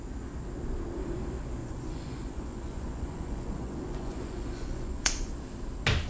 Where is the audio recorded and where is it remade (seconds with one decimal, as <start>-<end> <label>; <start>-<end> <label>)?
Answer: 0.0-1.6 recorded; 1.6-5.3 remade; 5.3-6.1 recorded